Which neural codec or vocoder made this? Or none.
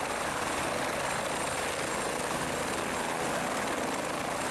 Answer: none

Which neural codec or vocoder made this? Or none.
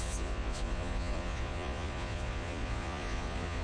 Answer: vocoder, Vocos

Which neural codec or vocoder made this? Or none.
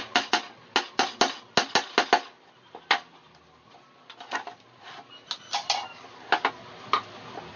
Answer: none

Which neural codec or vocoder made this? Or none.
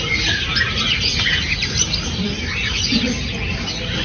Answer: none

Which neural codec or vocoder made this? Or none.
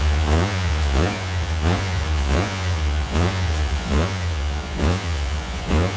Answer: vocoder, Vocos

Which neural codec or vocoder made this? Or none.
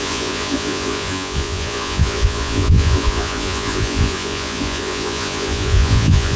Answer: vocoder, Vocos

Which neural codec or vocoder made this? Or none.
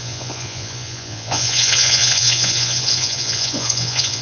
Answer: vocoder, Vocos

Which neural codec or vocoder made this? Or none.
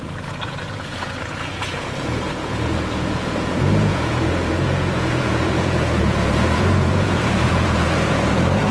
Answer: vocoder, Vocos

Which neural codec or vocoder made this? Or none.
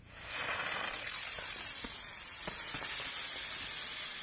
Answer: none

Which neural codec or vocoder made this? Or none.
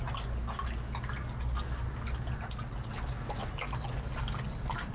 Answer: none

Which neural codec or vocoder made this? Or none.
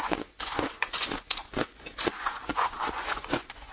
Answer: vocoder, Vocos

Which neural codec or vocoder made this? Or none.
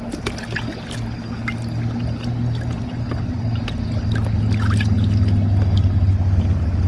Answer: none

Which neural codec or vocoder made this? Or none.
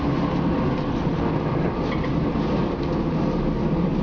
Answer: none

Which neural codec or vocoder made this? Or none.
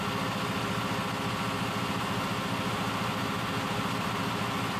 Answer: none